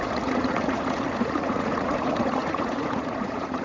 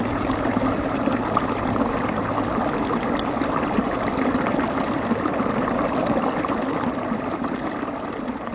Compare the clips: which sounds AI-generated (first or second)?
first